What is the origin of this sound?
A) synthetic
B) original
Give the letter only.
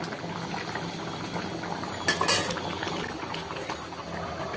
B